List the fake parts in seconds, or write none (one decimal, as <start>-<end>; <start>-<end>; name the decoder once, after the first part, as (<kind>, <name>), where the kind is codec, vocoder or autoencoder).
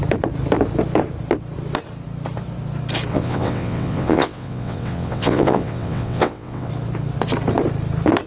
3.1-6.7 (vocoder, WaveNeXt)